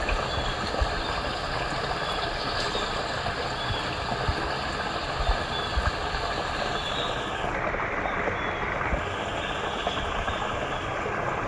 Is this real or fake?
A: real